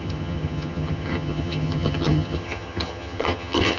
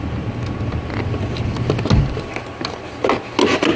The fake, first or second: first